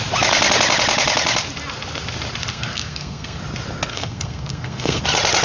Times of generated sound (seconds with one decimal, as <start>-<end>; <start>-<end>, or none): 2.5-3.4; 3.9-5.0